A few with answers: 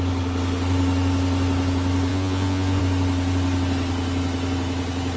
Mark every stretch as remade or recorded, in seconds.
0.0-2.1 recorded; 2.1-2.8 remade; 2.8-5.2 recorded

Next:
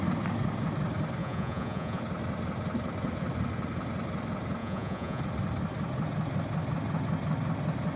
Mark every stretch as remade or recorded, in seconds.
0.0-1.2 recorded; 1.2-2.0 remade; 2.0-4.6 recorded; 4.6-5.2 remade; 5.2-8.0 recorded

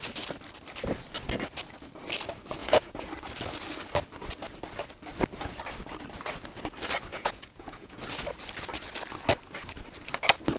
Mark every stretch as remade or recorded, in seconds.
0.0-2.6 recorded; 2.6-3.1 remade; 3.1-7.1 recorded; 7.1-8.0 remade; 8.0-10.6 recorded

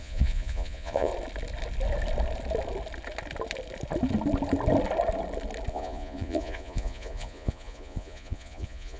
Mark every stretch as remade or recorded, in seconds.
0.0-1.1 remade; 1.1-5.7 recorded; 5.7-9.0 remade

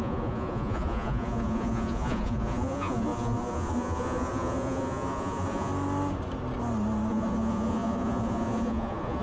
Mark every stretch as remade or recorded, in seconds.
0.0-5.7 remade; 5.7-7.1 recorded; 7.1-9.2 remade

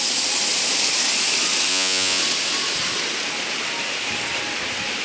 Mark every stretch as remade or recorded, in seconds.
0.0-1.7 recorded; 1.7-2.2 remade; 2.2-5.0 recorded

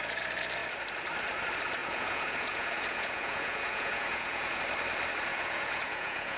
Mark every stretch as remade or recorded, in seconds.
0.0-1.8 recorded; 1.8-4.6 remade; 4.6-5.3 recorded; 5.3-6.4 remade

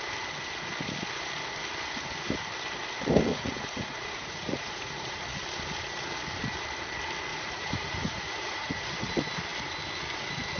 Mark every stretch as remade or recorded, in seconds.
0.0-3.3 recorded; 3.3-5.2 remade; 5.2-7.3 recorded; 7.3-8.7 remade; 8.7-10.6 recorded